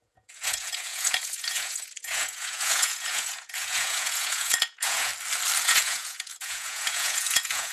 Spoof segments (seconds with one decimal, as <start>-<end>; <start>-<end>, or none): 0.0-5.1; 5.6-7.7